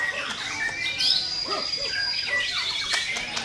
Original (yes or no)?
yes